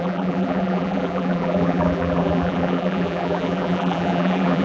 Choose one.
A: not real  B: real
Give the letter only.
A